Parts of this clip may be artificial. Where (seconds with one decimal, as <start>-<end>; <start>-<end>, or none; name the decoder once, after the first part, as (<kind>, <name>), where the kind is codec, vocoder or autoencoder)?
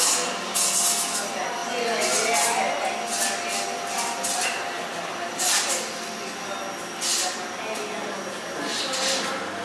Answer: none